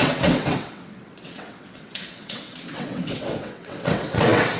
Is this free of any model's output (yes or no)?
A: no